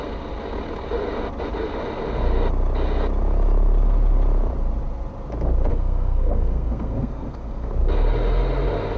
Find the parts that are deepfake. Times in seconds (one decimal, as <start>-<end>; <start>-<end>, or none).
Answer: 5.7-7.7